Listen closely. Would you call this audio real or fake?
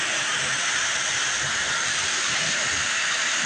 fake